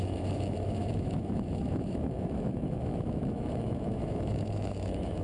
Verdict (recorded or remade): remade